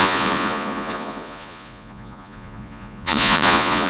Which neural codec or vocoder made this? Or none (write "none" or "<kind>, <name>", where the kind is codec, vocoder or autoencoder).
vocoder, Vocos